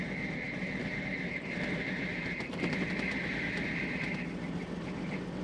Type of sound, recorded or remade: recorded